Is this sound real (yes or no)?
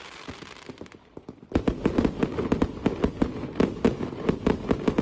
yes